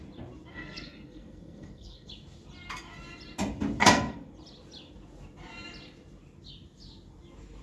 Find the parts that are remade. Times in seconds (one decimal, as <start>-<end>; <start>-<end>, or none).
0.5-2.1; 3.8-4.3